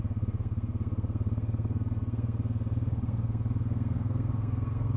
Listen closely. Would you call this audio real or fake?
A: fake